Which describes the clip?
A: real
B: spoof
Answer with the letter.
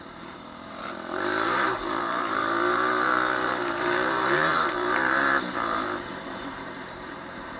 B